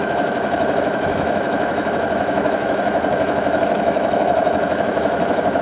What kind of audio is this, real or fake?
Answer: fake